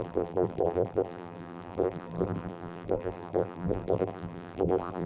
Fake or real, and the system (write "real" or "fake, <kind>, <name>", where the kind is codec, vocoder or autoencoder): fake, vocoder, BigVGAN v2